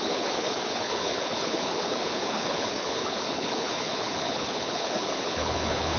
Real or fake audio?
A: fake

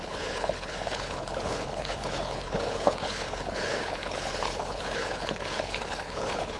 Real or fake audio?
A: fake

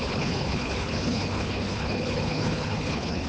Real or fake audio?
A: fake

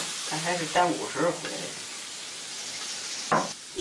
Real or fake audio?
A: real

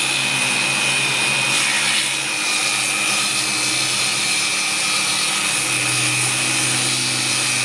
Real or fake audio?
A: real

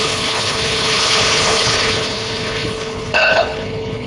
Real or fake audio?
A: fake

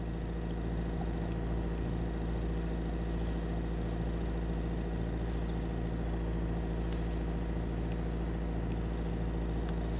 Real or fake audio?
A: real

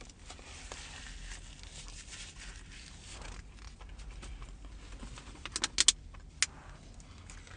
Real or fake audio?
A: real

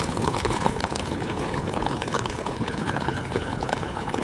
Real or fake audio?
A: fake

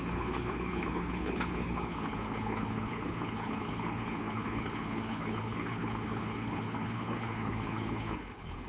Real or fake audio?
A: fake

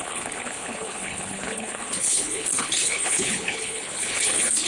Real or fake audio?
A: fake